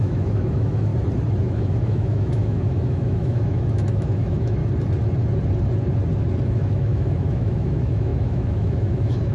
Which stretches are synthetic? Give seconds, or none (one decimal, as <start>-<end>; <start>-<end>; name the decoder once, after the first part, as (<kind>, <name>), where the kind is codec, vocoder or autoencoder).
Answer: 0.0-0.9 (autoencoder, DAC-VAE); 1.4-4.6; 6.5-9.3